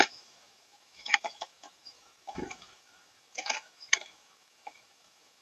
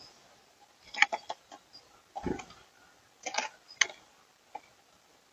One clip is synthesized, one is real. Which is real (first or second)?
second